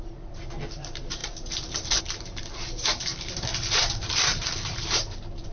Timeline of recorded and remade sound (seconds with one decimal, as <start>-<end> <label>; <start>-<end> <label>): 0.0-3.1 remade; 3.1-3.8 recorded; 3.8-5.5 remade